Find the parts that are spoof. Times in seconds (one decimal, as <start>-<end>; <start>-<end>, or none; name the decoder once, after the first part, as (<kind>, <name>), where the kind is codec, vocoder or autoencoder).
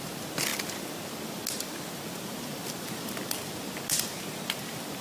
none